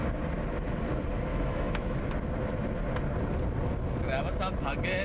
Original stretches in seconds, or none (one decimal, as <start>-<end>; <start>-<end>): 0.0-1.3; 2.0-5.0